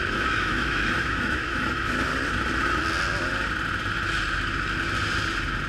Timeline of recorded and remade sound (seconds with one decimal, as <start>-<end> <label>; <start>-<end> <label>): 0.0-2.1 remade; 2.1-5.7 recorded

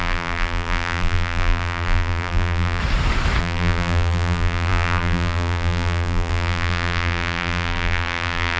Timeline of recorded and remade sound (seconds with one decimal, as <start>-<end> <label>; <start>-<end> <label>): 0.0-2.8 remade; 2.8-3.4 recorded; 3.4-8.6 remade

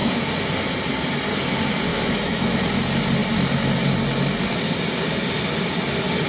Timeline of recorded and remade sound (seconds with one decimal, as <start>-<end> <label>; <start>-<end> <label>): 0.0-1.9 recorded; 1.9-2.6 remade; 2.6-6.3 recorded

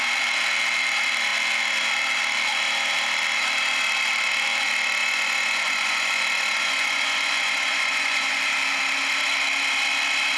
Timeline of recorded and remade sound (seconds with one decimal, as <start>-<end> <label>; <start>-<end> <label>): 0.0-5.0 recorded; 5.0-8.4 remade; 8.4-10.4 recorded

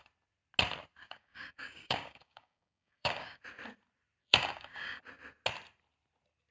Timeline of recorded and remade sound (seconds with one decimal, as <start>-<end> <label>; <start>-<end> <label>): 0.0-1.0 recorded; 1.0-3.4 remade; 3.4-4.2 recorded; 4.2-5.0 remade; 5.0-6.5 recorded

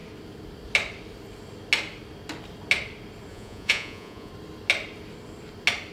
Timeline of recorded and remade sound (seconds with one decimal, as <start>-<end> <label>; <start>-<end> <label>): 0.0-3.3 recorded; 3.3-4.3 remade; 4.3-5.9 recorded